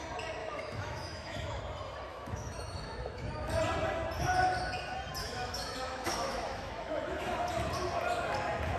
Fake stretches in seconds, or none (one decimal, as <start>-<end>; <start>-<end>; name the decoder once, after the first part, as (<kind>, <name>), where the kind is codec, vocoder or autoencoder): 0.4-1.6 (autoencoder, DAC-VAE); 2.1-3.3; 5.2-7.5